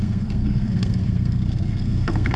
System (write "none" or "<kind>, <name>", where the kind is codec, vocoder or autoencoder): codec, SNAC